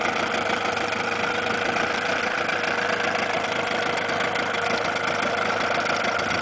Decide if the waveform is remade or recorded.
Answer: recorded